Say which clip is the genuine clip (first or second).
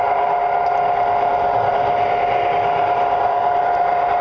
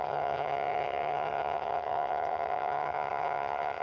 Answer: first